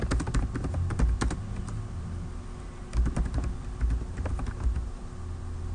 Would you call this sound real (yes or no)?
yes